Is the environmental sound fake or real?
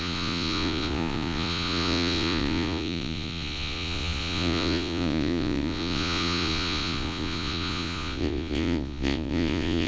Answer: fake